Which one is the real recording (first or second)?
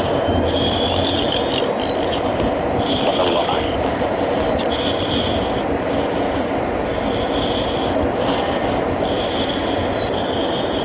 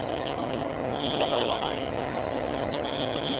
first